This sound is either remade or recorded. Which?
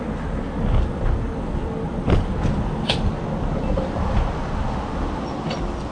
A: recorded